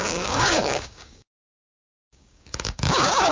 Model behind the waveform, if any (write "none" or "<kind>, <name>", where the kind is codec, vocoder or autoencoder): codec, DAC